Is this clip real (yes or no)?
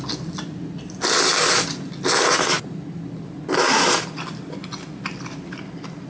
yes